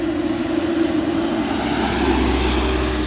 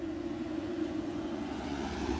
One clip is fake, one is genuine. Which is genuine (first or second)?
first